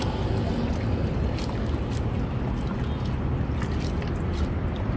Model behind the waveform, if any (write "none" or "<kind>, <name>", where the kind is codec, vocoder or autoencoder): none